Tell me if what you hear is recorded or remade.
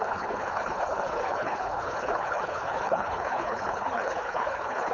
remade